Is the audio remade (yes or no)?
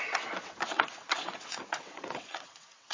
yes